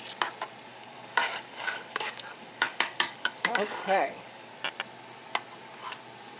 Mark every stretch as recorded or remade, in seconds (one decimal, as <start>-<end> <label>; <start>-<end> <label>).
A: 0.0-0.7 recorded; 0.7-4.5 remade; 4.5-6.4 recorded